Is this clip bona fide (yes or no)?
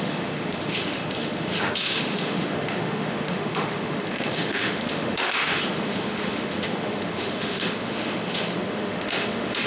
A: no